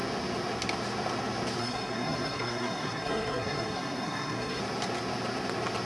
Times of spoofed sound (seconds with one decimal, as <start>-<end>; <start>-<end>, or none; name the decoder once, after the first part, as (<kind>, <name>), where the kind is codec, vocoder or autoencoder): 1.6-4.6 (codec, SNAC)